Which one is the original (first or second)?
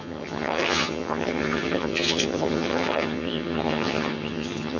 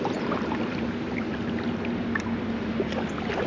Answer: second